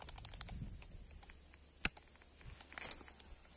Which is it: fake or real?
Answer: real